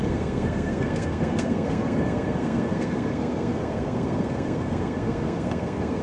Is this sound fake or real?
fake